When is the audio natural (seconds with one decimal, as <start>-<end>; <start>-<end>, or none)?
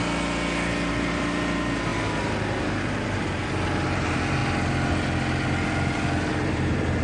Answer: 0.0-0.9; 4.4-6.3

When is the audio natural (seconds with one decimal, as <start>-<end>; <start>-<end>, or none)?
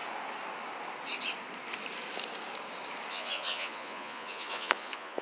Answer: 0.0-3.1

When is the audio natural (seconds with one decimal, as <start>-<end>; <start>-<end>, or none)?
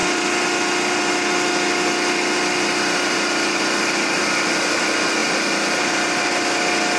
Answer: 0.0-7.0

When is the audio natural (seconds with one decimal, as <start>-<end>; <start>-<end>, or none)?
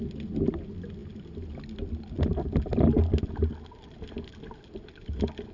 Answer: 0.0-5.5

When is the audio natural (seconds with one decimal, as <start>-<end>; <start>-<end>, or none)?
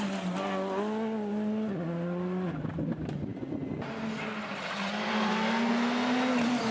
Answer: 0.0-4.5; 5.7-6.7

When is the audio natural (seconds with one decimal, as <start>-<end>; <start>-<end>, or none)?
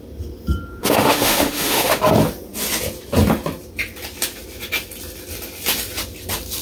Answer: 0.0-0.8; 2.0-6.6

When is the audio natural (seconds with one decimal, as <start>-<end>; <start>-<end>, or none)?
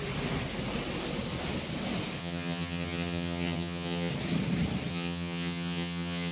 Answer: 0.0-2.2; 4.1-4.9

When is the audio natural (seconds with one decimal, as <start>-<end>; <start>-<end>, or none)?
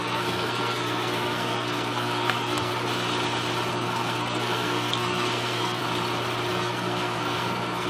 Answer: 2.7-3.7; 5.8-6.5